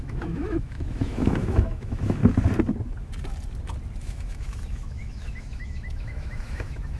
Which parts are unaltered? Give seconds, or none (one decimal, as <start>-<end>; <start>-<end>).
2.2-4.0